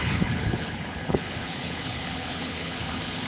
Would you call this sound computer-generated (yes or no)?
yes